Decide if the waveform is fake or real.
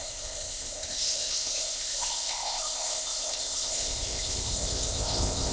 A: fake